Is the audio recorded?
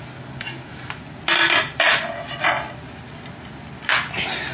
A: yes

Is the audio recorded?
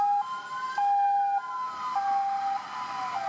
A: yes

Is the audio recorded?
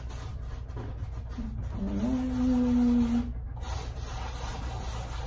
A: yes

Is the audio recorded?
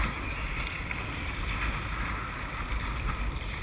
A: yes